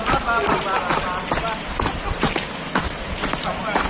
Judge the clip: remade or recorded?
recorded